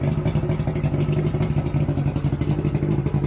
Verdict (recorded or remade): recorded